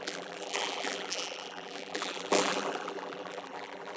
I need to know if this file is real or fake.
fake